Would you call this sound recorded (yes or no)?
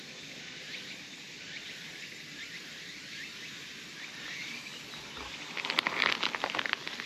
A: yes